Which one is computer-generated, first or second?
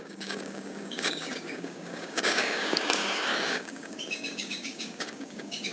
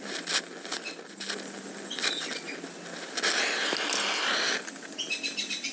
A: first